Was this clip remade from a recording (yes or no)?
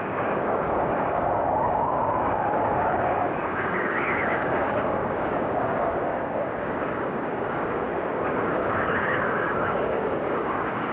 yes